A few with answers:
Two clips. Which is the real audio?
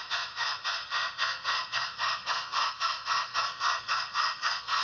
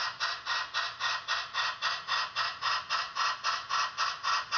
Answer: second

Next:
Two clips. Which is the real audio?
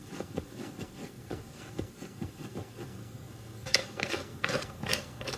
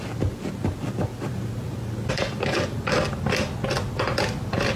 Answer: second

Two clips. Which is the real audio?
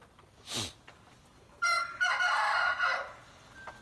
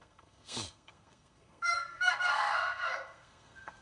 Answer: first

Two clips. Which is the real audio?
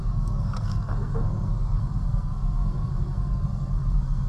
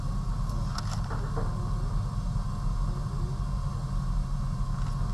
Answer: second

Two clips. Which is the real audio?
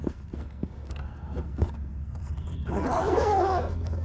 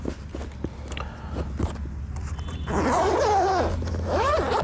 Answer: second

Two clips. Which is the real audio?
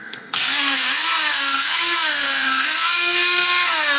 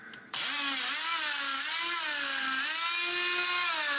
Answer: second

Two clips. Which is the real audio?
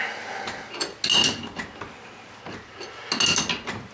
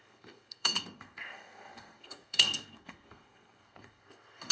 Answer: first